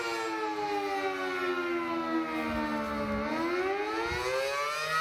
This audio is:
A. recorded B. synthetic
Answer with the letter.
A